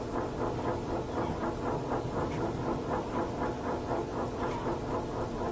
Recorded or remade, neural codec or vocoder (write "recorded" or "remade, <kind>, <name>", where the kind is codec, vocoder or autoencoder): recorded